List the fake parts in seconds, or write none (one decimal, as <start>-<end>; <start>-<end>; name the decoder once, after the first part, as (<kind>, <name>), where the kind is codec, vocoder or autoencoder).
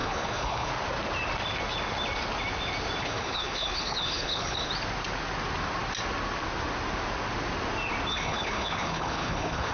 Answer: 0.0-0.7 (codec, HILCodec); 3.0-4.7; 8.1-9.7